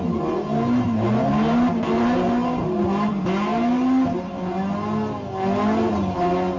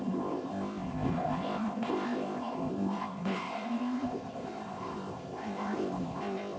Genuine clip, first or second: first